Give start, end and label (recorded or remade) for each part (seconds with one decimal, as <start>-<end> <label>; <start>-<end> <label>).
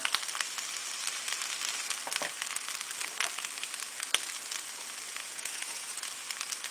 0.0-5.2 recorded; 5.2-6.1 remade; 6.1-6.7 recorded